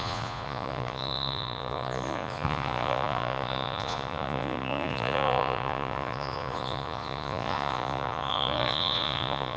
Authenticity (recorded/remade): remade